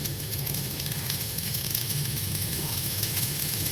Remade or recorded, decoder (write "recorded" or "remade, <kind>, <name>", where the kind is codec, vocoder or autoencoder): remade, autoencoder, DAC-VAE